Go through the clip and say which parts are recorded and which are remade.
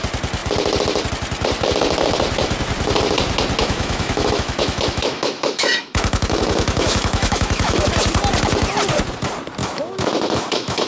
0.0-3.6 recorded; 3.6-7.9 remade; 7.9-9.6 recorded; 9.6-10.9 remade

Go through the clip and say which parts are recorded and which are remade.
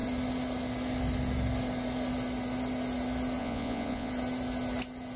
0.0-3.4 recorded; 3.4-4.1 remade; 4.1-5.2 recorded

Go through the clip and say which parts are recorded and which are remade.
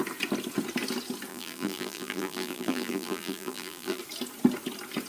0.0-1.3 recorded; 1.3-4.0 remade; 4.0-5.1 recorded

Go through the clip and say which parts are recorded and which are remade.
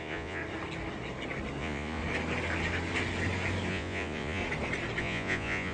0.0-0.4 remade; 0.4-1.6 recorded; 1.6-2.0 remade; 2.0-3.7 recorded; 3.7-4.4 remade; 4.4-5.0 recorded; 5.0-5.7 remade